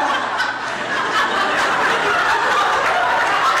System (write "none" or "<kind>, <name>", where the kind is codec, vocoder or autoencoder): none